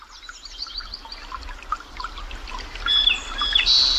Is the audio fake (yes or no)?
no